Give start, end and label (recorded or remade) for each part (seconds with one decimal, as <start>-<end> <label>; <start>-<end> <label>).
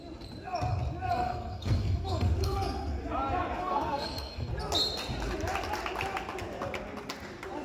0.0-1.1 recorded; 1.1-3.0 remade; 3.0-3.6 recorded; 3.6-4.5 remade; 4.5-7.6 recorded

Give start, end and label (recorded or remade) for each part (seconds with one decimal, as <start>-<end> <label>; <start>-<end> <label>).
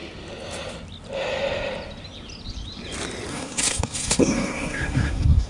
0.0-3.3 recorded; 3.3-5.5 remade